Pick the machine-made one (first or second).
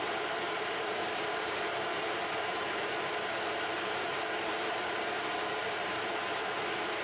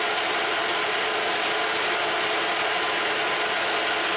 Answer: first